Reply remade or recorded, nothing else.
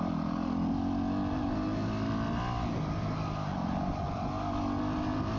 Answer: recorded